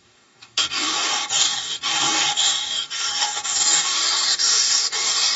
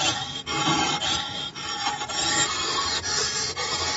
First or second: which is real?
second